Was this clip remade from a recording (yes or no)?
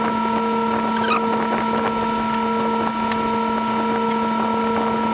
no